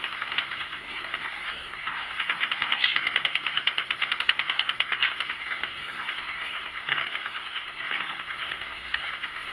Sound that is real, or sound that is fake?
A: fake